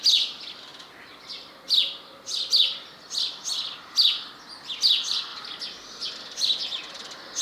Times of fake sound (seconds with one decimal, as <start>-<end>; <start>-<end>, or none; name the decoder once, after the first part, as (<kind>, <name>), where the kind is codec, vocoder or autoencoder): none